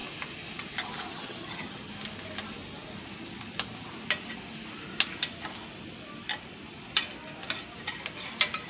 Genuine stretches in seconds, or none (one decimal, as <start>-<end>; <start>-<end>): 0.0-1.1; 1.9-8.7